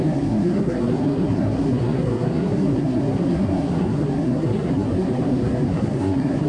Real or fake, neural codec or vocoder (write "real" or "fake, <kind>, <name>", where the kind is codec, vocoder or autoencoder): fake, codec, SNAC